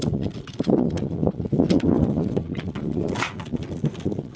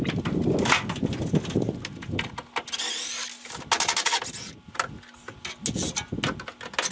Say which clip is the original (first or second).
second